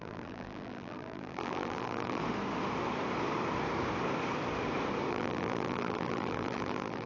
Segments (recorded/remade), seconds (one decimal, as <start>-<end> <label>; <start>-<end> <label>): 0.0-2.2 remade; 2.2-5.1 recorded; 5.1-7.1 remade